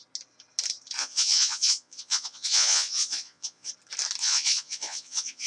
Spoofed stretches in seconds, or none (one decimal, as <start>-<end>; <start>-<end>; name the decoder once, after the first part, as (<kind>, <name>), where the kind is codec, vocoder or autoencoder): 1.0-3.7 (vocoder, Vocos); 4.2-5.5